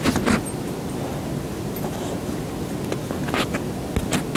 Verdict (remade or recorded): recorded